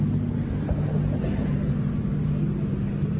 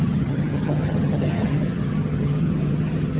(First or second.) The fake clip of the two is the second